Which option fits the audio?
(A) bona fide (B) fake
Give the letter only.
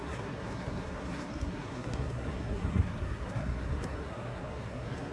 B